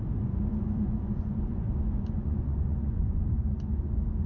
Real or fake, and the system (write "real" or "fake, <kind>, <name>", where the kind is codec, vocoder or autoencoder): fake, vocoder, Vocos